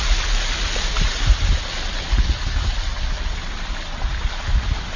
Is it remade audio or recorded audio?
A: recorded